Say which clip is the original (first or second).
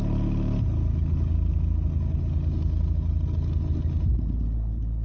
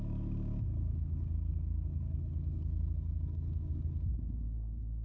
first